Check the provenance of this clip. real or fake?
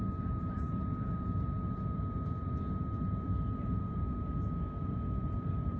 fake